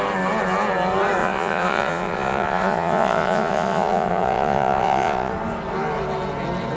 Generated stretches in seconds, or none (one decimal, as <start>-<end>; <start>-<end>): 1.2-5.3